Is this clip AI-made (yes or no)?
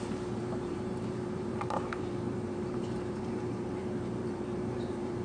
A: yes